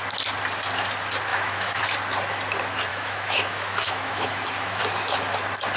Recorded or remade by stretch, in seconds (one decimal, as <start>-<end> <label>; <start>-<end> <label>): 0.0-1.3 recorded; 1.3-1.8 remade; 1.8-2.9 recorded; 2.9-4.8 remade; 4.8-5.8 recorded